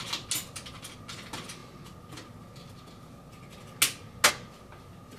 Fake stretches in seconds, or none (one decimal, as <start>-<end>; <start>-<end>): none